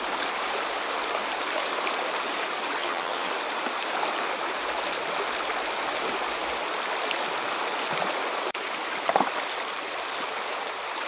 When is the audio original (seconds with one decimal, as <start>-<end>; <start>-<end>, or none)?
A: 0.0-2.8; 3.3-11.1